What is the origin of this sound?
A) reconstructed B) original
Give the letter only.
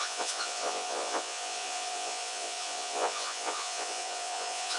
A